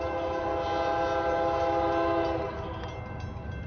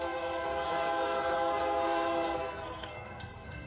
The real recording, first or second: first